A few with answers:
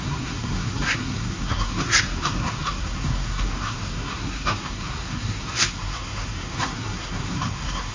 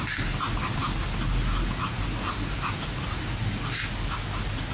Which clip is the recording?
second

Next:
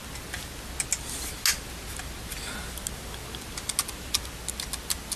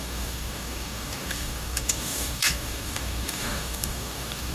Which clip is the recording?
first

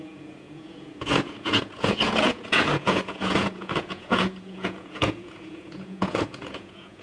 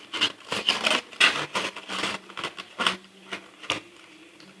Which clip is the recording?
second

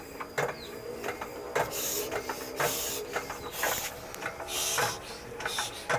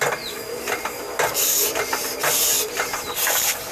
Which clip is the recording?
first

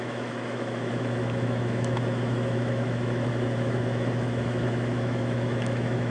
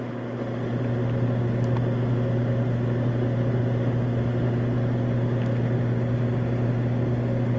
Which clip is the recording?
second